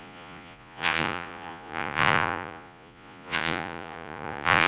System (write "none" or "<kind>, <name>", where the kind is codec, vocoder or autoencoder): vocoder, Vocos